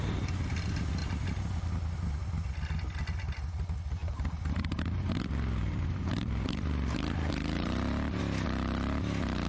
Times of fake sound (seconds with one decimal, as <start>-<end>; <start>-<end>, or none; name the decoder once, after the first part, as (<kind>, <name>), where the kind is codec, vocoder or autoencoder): 4.0-8.2 (vocoder, BigVGAN v2)

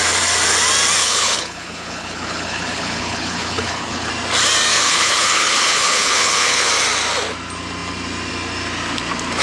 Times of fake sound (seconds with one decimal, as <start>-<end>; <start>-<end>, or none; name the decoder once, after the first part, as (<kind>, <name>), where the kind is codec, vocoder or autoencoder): 1.0-4.1 (codec, HILCodec); 4.7-6.7

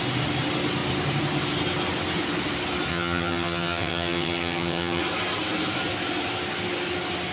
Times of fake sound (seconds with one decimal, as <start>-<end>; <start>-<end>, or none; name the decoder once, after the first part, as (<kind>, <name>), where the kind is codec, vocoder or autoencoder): 2.9-5.0 (vocoder, HiFi-GAN)

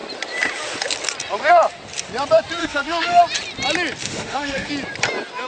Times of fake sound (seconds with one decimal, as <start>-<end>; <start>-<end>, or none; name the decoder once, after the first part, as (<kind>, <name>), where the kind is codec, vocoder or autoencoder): 2.6-3.2 (autoencoder, DAC-VAE); 4.0-4.7

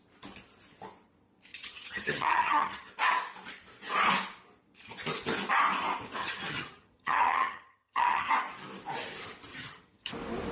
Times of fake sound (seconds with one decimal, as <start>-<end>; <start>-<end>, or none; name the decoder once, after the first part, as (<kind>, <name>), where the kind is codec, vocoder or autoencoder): 1.5-2.9 (vocoder, HiFi-GAN); 6.2-8.3; 9.5-10.1

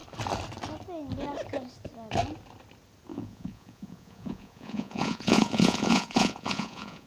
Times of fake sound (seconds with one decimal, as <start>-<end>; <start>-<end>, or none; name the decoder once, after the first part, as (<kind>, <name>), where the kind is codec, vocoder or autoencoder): 3.1-7.1 (vocoder, Vocos)